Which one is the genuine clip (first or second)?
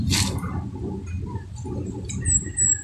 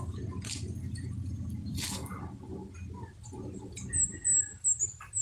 second